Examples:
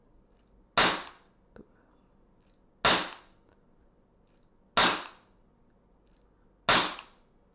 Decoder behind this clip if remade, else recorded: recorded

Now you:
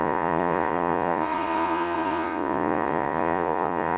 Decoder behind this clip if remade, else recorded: remade, vocoder, Vocos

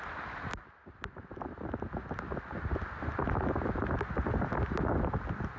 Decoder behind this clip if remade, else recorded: recorded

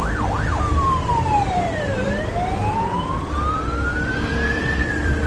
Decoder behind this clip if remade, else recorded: remade, vocoder, BigVGAN v2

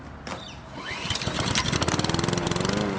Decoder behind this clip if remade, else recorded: recorded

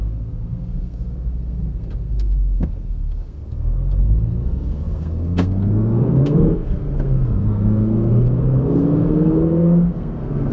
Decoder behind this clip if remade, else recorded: remade, codec, SNAC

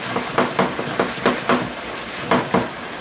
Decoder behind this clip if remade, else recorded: recorded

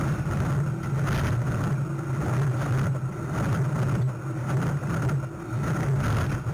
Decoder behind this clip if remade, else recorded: recorded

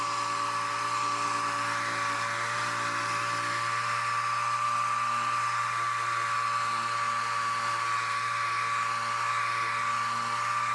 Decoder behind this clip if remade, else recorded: recorded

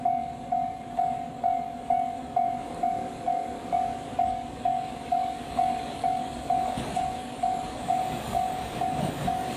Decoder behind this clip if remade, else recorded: remade, codec, DAC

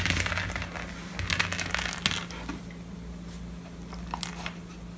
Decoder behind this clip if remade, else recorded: recorded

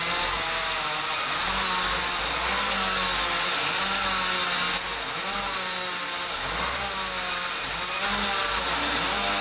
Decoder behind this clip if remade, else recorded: recorded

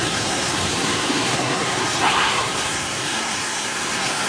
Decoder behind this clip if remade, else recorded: remade, codec, SNAC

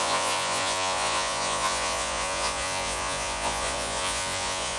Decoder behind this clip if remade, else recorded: remade, vocoder, Vocos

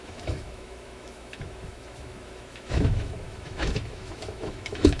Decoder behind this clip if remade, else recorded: remade, autoencoder, DAC-VAE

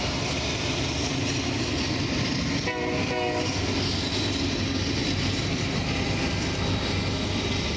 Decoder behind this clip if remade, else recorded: recorded